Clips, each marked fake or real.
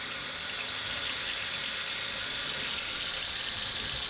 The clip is real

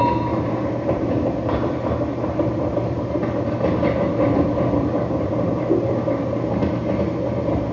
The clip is fake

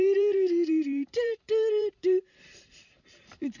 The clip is fake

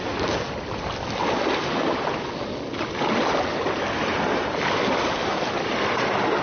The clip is real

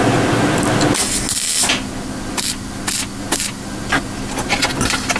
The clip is real